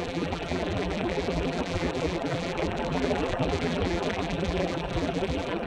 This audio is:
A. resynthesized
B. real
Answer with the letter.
A